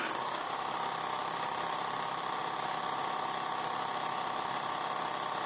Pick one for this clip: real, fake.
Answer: real